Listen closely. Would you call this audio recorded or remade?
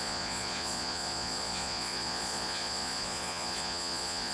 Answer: remade